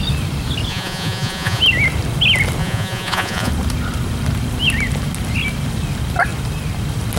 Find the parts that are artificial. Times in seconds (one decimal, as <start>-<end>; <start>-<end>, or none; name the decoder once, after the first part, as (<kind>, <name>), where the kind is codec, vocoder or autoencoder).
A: 0.7-1.6 (vocoder, Vocos); 2.6-3.5